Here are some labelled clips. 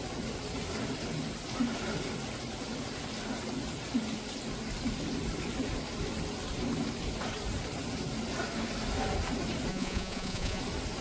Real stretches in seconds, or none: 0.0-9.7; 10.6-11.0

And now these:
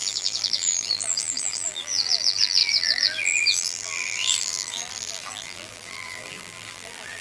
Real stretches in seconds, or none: none

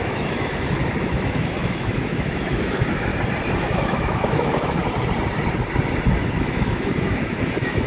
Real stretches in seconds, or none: 3.1-3.6; 4.8-6.3

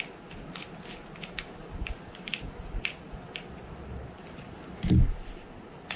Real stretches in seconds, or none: 0.0-6.0

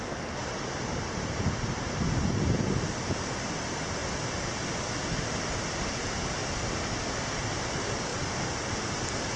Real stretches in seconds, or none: 0.0-0.4; 1.9-9.4

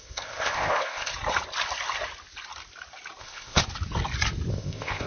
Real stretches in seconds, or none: 1.1-3.2; 3.6-4.5